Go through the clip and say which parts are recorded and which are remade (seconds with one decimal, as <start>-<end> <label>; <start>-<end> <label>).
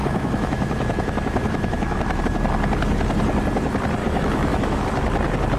0.0-2.2 remade; 2.2-4.0 recorded; 4.0-4.8 remade; 4.8-5.6 recorded